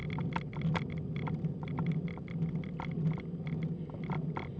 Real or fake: real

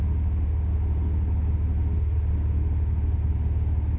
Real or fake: real